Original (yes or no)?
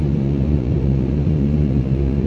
no